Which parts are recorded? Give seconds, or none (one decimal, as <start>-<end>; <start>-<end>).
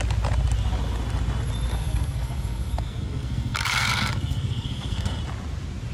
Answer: 0.0-1.7; 5.2-5.9